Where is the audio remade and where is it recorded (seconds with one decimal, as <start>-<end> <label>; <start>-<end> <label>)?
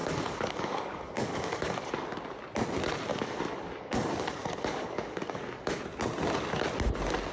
0.0-1.9 remade; 1.9-3.1 recorded; 3.1-5.8 remade; 5.8-7.3 recorded